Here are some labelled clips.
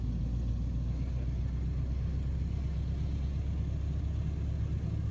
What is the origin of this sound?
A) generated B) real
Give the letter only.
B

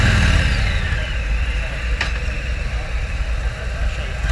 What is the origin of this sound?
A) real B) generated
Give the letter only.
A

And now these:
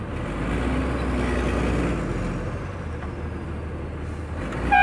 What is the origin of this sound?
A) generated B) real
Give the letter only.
B